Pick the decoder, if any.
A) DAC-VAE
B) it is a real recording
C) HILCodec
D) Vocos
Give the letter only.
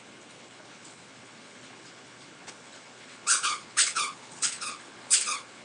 C